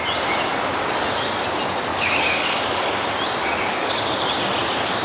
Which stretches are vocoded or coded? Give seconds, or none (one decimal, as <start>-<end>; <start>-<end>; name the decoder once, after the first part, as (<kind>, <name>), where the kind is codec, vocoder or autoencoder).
1.9-2.9 (codec, DAC); 3.4-4.1